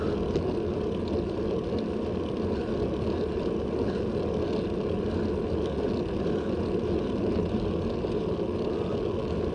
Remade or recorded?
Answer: recorded